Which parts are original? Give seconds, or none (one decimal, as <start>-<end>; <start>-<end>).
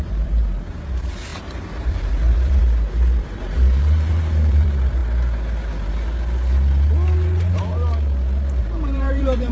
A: 5.0-8.6